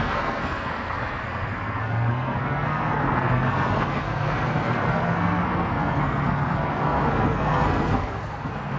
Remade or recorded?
remade